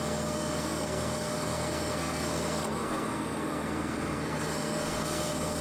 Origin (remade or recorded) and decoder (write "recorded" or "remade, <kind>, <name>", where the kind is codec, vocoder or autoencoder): remade, codec, SNAC